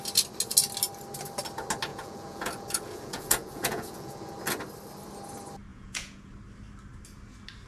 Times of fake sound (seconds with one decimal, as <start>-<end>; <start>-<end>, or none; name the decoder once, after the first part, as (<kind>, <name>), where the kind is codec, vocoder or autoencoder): 1.9-4.4 (vocoder, Vocos); 5.7-6.3